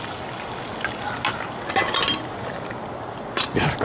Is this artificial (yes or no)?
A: no